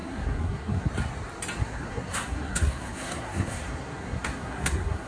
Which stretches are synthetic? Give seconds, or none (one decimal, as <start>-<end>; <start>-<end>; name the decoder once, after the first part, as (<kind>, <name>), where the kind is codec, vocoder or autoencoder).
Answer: 0.0-0.9 (codec, SNAC); 1.6-5.1